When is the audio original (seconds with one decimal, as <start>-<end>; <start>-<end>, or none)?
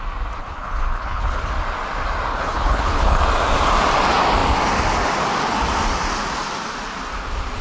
0.0-0.4; 1.5-2.3; 3.2-7.6